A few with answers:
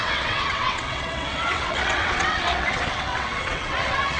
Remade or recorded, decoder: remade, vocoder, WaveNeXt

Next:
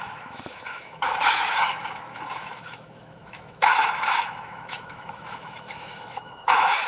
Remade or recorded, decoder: remade, autoencoder, DAC-VAE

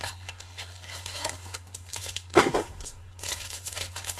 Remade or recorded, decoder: remade, codec, SNAC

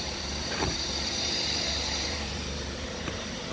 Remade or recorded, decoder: remade, vocoder, BigVGAN v2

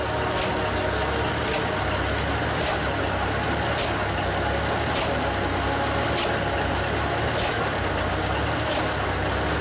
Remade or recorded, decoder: recorded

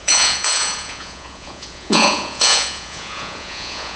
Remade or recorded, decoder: remade, vocoder, Vocos